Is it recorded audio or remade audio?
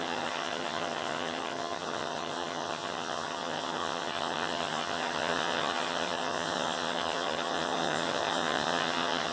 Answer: remade